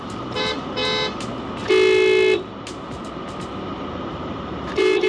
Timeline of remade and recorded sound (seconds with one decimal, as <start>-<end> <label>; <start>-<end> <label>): 0.0-0.8 remade; 0.8-3.9 recorded; 3.9-5.1 remade